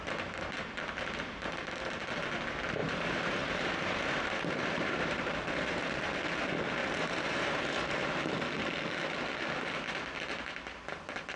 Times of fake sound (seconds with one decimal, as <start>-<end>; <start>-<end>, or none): 2.8-5.3; 6.8-8.2